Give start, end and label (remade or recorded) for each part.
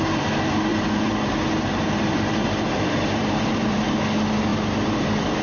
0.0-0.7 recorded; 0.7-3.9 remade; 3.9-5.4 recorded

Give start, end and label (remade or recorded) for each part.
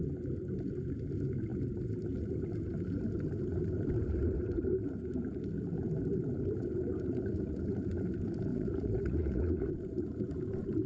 0.0-8.5 recorded; 8.5-9.7 remade; 9.7-10.9 recorded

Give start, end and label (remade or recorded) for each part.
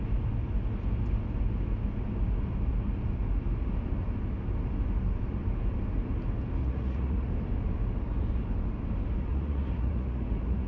0.0-6.6 recorded; 6.6-7.3 remade; 7.3-9.3 recorded; 9.3-10.7 remade